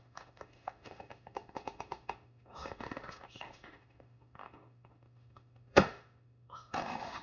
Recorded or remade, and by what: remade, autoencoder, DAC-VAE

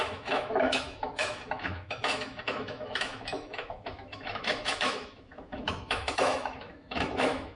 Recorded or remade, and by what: remade, autoencoder, DAC-VAE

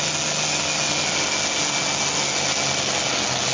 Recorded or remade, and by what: recorded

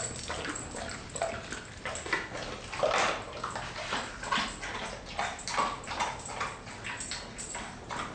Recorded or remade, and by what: recorded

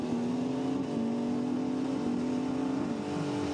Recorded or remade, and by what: recorded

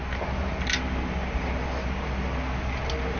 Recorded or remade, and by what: recorded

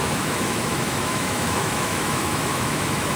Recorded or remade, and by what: remade, autoencoder, DAC-VAE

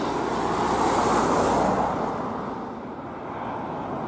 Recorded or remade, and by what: recorded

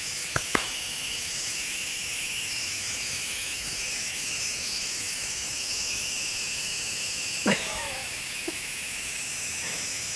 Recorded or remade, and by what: remade, autoencoder, DAC-VAE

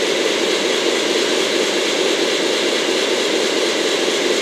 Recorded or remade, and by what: recorded